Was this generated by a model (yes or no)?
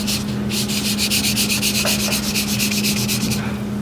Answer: no